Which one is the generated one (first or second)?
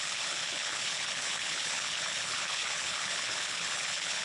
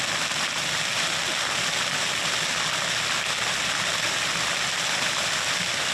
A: first